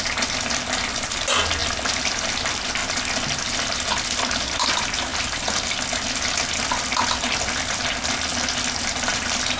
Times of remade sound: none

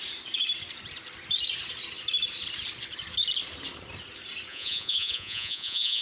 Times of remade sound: 4.5-6.0 (vocoder, Vocos)

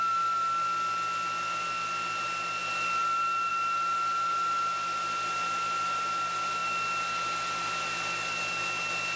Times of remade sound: none

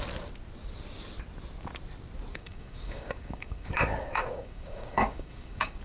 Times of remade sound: 2.3-5.8 (codec, DAC)

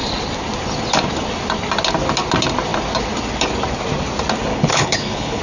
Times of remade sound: 4.5-5.4 (codec, HILCodec)

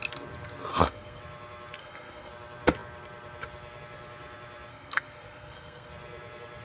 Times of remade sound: 0.7-1.2 (codec, SNAC); 1.8-2.3; 4.7-5.9

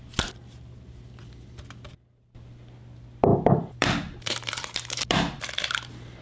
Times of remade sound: 3.3-5.4 (vocoder, BigVGAN v2)